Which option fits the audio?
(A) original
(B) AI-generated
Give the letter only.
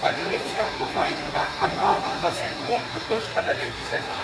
B